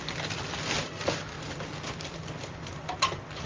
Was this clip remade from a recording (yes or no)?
no